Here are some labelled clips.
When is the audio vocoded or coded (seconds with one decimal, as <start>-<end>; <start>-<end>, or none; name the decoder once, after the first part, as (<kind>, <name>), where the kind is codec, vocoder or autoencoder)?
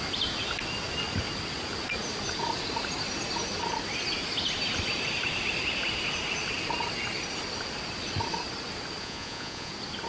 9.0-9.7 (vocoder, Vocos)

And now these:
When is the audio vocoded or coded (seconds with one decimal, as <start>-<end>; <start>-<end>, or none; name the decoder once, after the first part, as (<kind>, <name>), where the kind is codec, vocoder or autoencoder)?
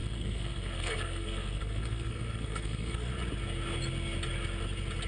0.0-3.1 (codec, SNAC)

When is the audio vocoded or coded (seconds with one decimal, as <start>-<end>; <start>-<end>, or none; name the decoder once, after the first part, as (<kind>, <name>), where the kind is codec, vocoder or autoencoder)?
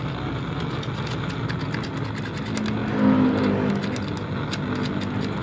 none